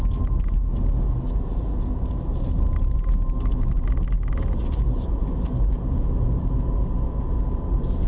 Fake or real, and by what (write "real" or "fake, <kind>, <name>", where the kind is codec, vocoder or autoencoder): real